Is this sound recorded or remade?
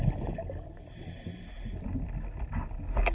recorded